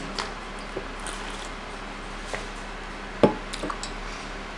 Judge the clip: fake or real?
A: real